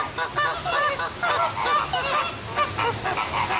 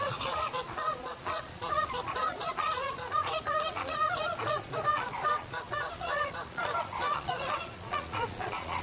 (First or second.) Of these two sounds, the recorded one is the first